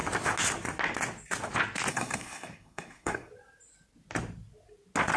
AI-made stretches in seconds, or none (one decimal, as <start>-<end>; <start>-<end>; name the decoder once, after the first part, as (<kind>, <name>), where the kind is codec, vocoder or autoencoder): 1.9-3.3 (codec, SNAC)